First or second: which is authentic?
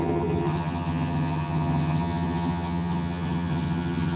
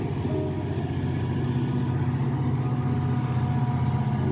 second